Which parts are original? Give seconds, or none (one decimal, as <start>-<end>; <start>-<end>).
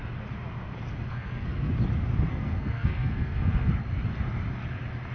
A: 0.0-1.1; 1.7-2.3; 3.7-5.1